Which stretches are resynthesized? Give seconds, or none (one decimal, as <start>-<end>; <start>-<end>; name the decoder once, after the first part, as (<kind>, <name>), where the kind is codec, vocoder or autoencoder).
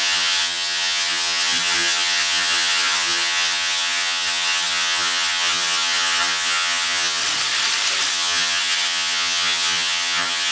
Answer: 0.0-7.2 (vocoder, HiFi-GAN); 8.1-10.5